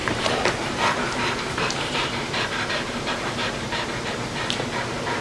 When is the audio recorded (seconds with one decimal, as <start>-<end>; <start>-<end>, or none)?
3.1-5.2

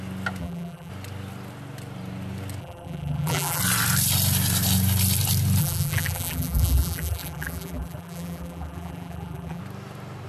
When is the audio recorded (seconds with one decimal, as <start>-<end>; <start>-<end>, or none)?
0.0-0.4; 0.9-2.6; 3.6-5.6; 9.6-10.3

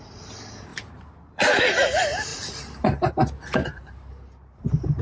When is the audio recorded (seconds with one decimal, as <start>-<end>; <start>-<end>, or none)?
0.0-0.7; 1.6-2.3; 3.1-3.6

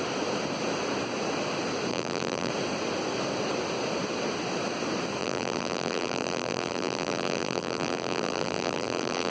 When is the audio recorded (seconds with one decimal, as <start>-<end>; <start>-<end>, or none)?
0.0-1.9; 2.5-5.2

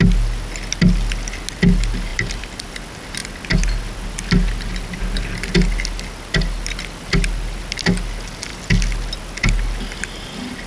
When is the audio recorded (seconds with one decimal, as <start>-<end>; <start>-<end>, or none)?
0.0-2.1; 2.7-10.7